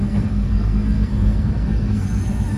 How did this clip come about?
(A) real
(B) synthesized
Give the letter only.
B